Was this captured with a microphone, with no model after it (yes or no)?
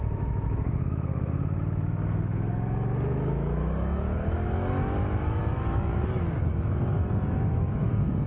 no